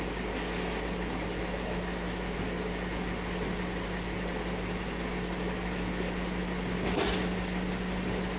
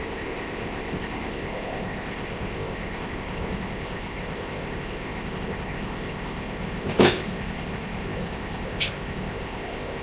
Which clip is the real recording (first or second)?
first